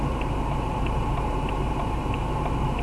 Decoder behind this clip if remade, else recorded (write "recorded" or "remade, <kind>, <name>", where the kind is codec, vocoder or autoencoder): remade, vocoder, BigVGAN v2